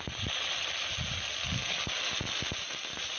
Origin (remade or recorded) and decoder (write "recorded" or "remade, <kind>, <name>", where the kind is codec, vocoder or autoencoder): recorded